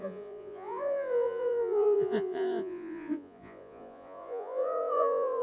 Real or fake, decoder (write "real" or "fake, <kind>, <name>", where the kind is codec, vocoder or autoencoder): fake, vocoder, Vocos